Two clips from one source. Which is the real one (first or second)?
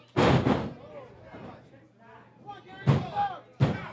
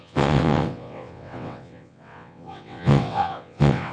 first